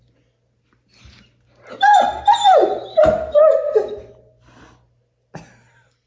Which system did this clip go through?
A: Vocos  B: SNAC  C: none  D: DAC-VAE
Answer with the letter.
C